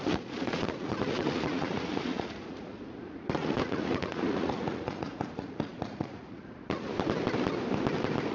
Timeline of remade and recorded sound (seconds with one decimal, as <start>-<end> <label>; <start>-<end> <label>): 0.0-6.9 remade; 6.9-8.3 recorded